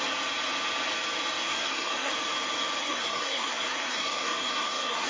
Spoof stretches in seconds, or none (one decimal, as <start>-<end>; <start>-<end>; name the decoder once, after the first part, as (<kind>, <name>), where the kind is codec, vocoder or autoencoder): 1.5-2.1 (codec, SNAC); 2.8-5.1